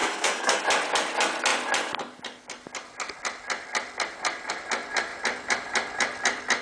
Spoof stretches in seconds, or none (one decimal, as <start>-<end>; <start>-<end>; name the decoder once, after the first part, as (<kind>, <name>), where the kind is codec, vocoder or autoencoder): 0.0-0.6 (codec, SNAC)